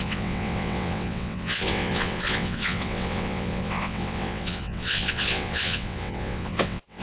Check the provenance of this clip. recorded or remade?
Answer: remade